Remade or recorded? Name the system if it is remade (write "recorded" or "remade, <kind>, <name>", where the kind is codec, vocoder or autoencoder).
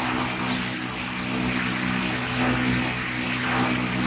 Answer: recorded